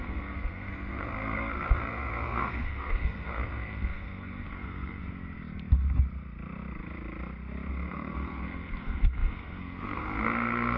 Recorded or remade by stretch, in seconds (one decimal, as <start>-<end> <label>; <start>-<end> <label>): 0.0-5.0 remade; 5.0-7.7 recorded; 7.7-10.8 remade